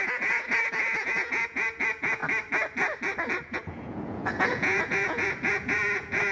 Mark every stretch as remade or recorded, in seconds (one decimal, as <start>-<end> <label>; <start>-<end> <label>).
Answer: 0.0-2.2 remade; 2.2-3.4 recorded; 3.4-6.3 remade